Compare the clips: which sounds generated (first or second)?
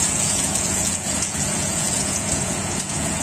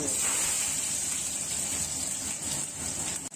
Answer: first